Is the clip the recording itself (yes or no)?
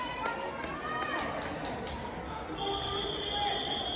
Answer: yes